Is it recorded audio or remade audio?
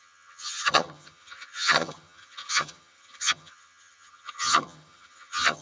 remade